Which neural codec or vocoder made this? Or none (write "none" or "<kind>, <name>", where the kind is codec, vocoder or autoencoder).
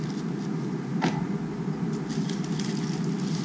none